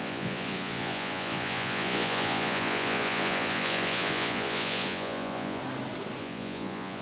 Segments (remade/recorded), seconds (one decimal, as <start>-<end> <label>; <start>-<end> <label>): 0.0-5.6 remade; 5.6-6.2 recorded; 6.2-7.0 remade